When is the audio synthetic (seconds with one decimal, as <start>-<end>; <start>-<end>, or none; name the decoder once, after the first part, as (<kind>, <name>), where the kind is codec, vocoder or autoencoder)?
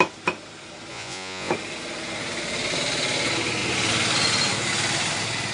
0.9-1.5 (vocoder, Vocos)